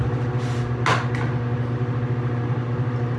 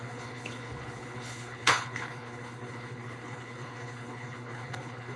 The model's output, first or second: second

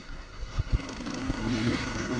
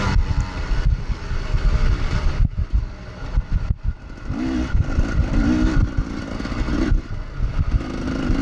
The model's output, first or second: first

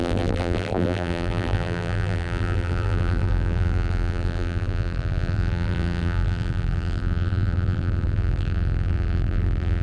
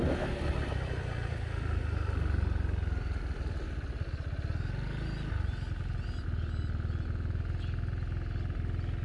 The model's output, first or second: first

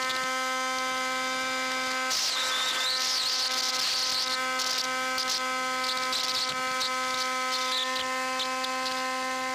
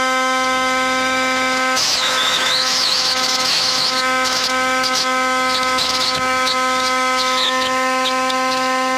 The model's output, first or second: second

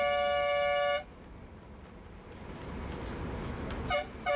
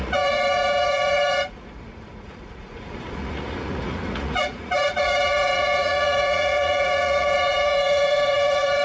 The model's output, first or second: second